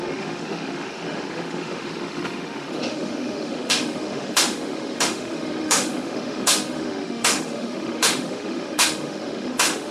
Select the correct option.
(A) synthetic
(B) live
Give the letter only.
A